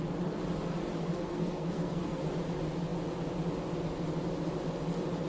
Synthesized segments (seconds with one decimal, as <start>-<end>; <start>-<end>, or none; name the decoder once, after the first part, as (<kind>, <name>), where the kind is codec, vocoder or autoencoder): 1.0-2.2 (codec, SNAC)